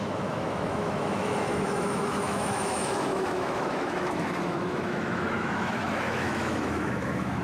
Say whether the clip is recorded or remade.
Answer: remade